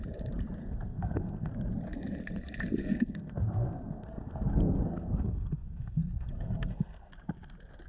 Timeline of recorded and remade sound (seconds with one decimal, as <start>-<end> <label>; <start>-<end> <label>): 0.0-0.6 recorded; 0.6-1.5 remade; 1.5-2.8 recorded; 2.8-7.1 remade; 7.1-7.9 recorded